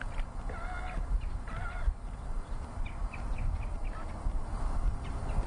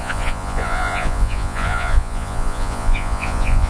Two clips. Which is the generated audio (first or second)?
second